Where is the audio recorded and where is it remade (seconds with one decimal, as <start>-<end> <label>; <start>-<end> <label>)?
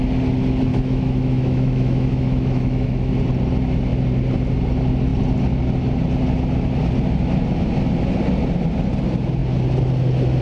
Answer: 0.0-0.7 recorded; 0.7-3.1 remade; 3.1-10.4 recorded